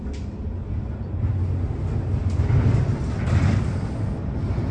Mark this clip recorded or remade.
recorded